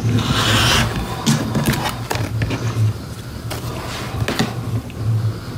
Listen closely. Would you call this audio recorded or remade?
recorded